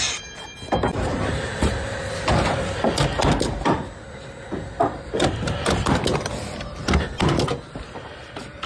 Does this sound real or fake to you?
real